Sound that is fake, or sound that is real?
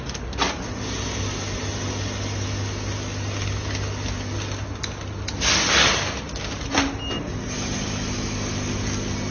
real